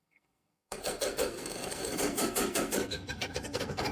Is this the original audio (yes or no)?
no